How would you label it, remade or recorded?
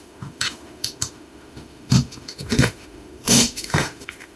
remade